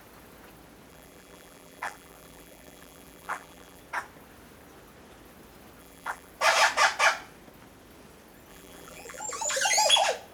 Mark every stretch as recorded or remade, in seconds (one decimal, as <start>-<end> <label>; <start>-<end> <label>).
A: 0.0-0.9 recorded; 0.9-3.8 remade; 3.8-5.8 recorded; 5.8-6.3 remade; 6.3-8.5 recorded; 8.5-9.2 remade; 9.2-10.3 recorded